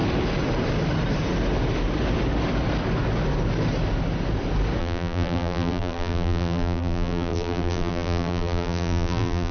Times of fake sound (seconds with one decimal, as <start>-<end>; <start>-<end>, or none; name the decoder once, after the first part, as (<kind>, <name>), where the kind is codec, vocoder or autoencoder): 4.8-9.5 (vocoder, BigVGAN v2)